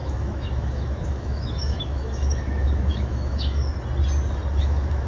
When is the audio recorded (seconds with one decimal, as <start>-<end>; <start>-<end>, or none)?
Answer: 3.6-4.6